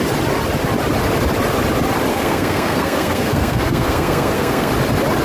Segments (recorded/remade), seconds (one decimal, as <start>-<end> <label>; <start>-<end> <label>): 0.0-2.1 recorded; 2.1-4.7 remade; 4.7-5.2 recorded